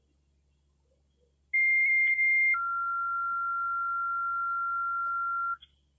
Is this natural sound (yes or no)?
yes